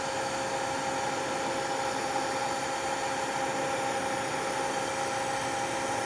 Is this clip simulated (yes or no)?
no